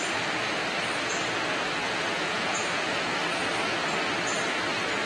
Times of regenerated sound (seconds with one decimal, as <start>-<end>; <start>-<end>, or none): 1.8-3.1